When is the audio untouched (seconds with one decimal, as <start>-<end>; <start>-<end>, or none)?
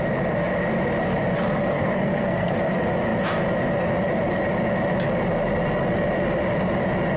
0.0-1.7; 2.5-7.2